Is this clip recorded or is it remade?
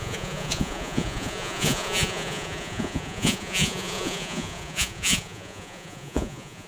remade